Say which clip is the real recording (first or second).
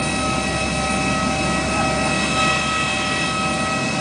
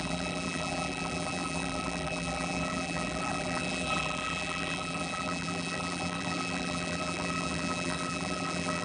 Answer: first